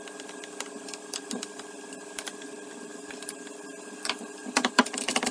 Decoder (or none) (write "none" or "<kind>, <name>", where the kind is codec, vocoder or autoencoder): none